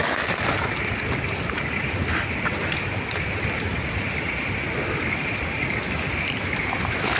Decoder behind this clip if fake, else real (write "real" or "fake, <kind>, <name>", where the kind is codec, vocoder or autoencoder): real